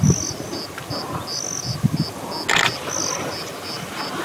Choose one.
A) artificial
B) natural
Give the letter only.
B